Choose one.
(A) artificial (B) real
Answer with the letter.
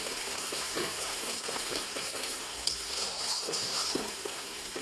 A